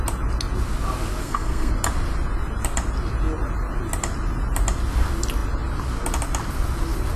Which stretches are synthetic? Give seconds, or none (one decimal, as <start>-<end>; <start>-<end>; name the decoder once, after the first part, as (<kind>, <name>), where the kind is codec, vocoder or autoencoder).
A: 1.2-1.7 (codec, SNAC)